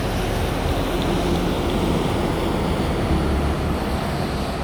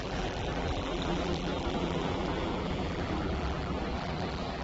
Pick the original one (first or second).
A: first